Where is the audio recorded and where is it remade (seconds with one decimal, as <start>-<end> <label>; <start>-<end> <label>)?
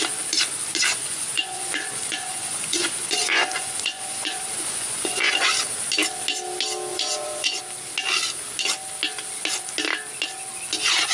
0.0-0.9 recorded; 0.9-5.5 remade; 5.5-6.9 recorded; 6.9-7.6 remade; 7.6-11.1 recorded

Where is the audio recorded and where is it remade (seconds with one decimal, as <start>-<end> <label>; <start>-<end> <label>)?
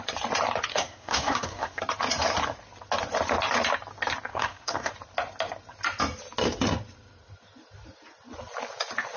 0.0-0.7 recorded; 0.7-1.8 remade; 1.8-4.3 recorded; 4.3-4.9 remade; 4.9-9.2 recorded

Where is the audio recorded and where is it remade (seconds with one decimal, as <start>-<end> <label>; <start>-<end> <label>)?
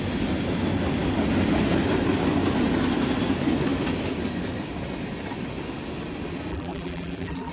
0.0-6.5 recorded; 6.5-7.5 remade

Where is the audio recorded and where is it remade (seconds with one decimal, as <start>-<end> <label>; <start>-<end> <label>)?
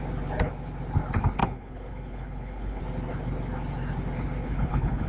0.0-1.4 recorded; 1.4-2.8 remade; 2.8-4.4 recorded; 4.4-5.1 remade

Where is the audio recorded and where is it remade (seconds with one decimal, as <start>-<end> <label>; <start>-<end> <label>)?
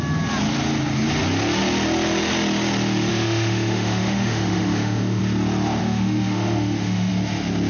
0.0-3.1 recorded; 3.1-5.2 remade; 5.2-5.8 recorded; 5.8-7.1 remade; 7.1-7.7 recorded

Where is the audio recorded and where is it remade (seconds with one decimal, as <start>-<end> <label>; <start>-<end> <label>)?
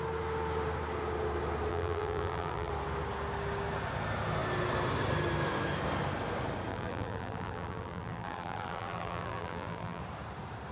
0.0-1.7 recorded; 1.7-2.7 remade; 2.7-6.7 recorded; 6.7-10.0 remade; 10.0-10.7 recorded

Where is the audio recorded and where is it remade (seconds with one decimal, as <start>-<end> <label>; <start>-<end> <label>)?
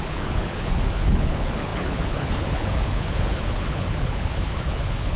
0.0-5.2 remade